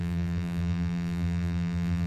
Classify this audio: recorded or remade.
remade